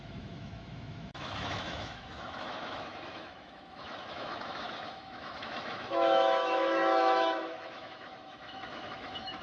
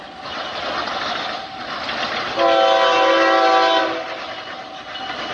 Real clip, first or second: second